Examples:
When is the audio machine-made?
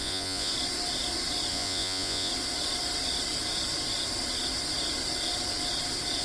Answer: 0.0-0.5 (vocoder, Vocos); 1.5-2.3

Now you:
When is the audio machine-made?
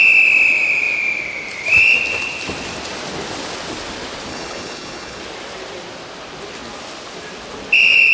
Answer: 4.3-5.2 (codec, HILCodec)